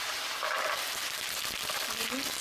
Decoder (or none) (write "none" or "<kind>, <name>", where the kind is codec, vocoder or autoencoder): none